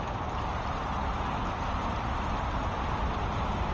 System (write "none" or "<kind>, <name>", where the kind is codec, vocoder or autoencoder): none